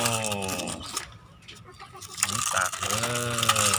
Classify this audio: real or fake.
real